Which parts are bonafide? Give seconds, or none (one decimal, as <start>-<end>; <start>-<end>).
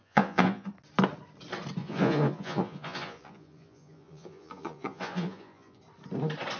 0.7-1.8; 5.8-6.6